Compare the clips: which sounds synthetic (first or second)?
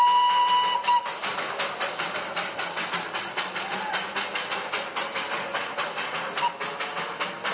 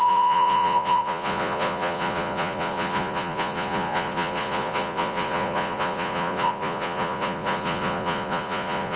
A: second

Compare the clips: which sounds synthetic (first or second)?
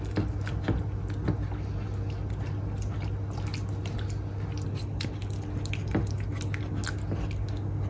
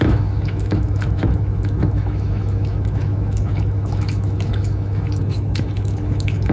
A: second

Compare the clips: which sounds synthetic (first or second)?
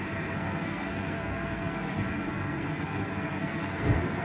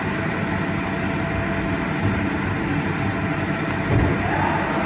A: first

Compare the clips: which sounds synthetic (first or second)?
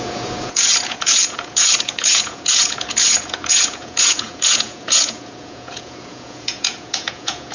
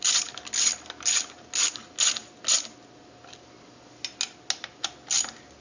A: first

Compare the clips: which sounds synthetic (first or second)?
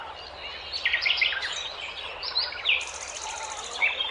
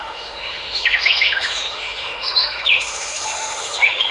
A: second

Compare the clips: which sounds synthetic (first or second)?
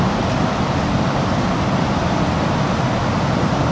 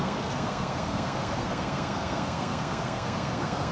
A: second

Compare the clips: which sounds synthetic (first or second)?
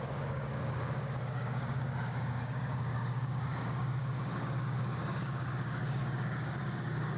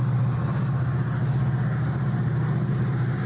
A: first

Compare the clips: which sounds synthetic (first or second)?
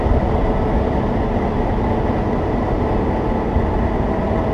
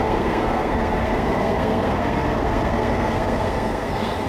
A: second